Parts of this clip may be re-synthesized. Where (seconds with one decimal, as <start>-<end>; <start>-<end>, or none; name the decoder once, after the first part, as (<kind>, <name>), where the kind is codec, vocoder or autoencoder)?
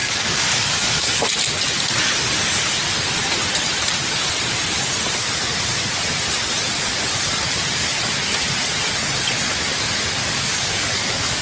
0.0-1.0 (codec, DAC); 10.2-11.4